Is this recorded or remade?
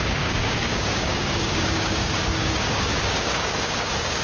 remade